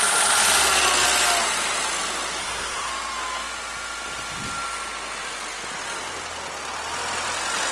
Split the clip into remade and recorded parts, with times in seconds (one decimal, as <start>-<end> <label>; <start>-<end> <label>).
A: 0.0-2.4 recorded; 2.4-2.9 remade; 2.9-7.7 recorded